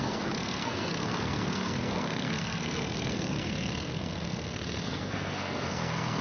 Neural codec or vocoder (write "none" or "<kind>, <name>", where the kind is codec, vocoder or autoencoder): codec, SNAC